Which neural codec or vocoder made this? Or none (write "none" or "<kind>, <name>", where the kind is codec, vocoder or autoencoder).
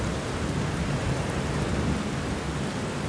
none